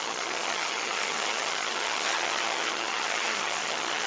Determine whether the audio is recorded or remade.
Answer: remade